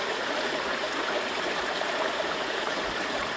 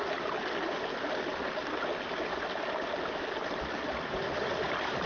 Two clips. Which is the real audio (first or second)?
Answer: second